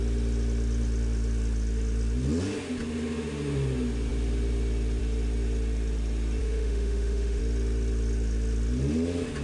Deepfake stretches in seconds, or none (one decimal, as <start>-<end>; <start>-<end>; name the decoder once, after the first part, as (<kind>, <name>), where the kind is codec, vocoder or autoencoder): 6.4-7.4 (autoencoder, DAC-VAE)